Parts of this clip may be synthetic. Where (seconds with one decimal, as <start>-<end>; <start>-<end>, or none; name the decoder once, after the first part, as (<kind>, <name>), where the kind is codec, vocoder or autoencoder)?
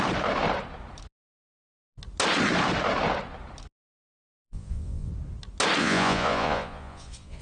4.2-5.1 (vocoder, Vocos); 5.8-7.4